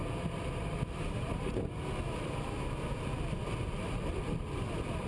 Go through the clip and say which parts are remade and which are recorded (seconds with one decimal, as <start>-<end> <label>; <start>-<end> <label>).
0.0-1.7 remade; 1.7-3.4 recorded; 3.4-4.4 remade; 4.4-5.1 recorded